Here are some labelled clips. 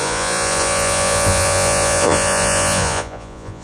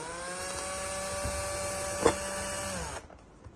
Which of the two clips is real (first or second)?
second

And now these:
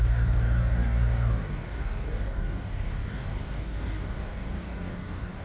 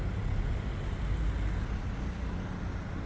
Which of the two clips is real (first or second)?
second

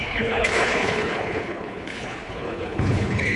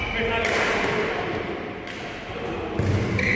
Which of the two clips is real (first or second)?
second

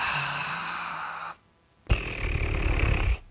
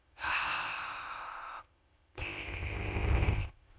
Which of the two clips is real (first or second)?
first